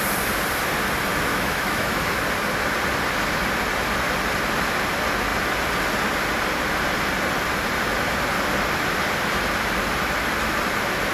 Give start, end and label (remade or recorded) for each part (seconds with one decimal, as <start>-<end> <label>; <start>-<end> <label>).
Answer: 0.0-1.3 recorded; 1.3-2.2 remade; 2.2-11.1 recorded